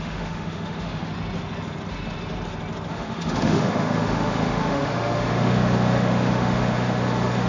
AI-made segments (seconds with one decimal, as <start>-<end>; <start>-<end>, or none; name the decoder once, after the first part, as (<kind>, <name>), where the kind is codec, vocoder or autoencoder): 0.0-1.1 (autoencoder, DAC-VAE); 2.9-7.5